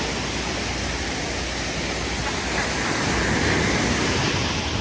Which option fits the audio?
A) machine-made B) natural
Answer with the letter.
B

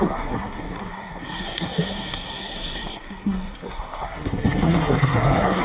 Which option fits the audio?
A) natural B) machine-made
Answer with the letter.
B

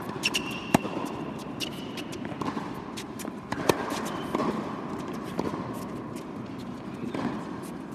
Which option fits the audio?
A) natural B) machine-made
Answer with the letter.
A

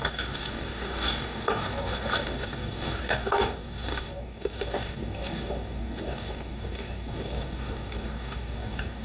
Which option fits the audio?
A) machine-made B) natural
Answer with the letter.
A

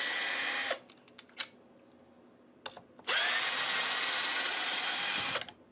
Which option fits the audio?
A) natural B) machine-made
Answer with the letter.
A